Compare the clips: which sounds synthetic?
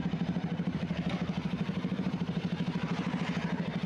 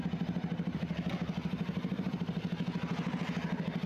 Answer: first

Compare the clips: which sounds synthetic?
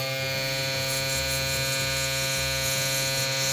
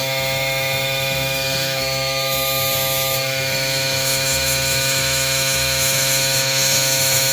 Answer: second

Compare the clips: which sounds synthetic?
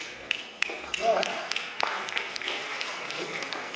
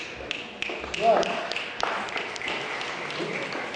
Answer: first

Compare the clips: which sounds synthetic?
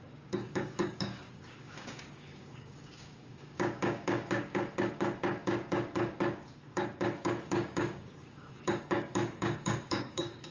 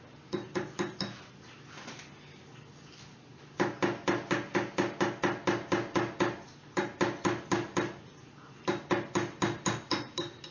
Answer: first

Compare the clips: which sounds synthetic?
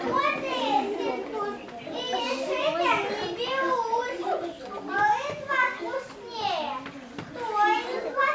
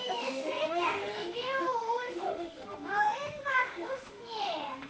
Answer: second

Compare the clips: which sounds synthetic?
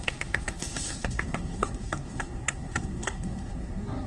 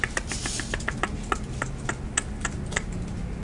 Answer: first